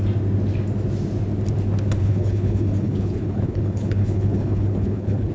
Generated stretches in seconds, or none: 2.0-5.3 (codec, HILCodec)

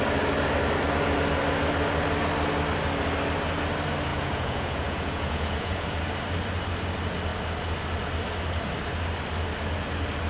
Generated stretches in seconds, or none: 4.1-6.0 (vocoder, Vocos)

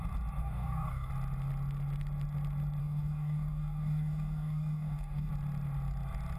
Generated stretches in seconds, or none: 0.4-1.1 (codec, DAC); 2.8-5.3

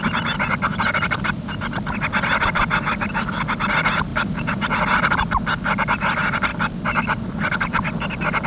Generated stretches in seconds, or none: none

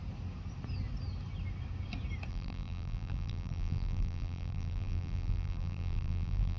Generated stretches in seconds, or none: 2.3-6.6 (vocoder, BigVGAN v2)

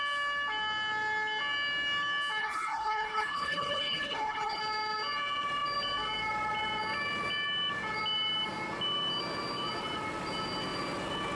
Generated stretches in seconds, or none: 2.4-4.6 (codec, HILCodec)

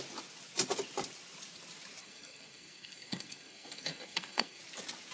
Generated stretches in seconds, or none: 2.0-4.6 (codec, SNAC)